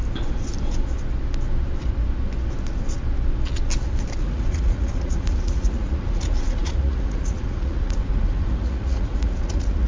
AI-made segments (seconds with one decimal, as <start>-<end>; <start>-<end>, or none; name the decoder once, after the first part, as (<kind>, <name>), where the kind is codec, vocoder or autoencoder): 4.2-9.9 (vocoder, Vocos)

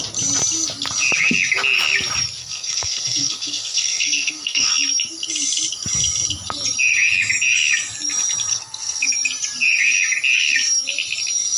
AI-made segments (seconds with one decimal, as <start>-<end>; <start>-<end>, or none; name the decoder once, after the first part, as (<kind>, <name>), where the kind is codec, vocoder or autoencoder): 2.4-4.7 (codec, SNAC); 8.5-9.1